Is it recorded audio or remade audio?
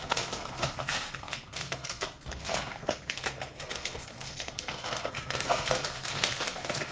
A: remade